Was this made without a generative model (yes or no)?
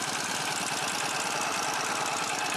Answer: yes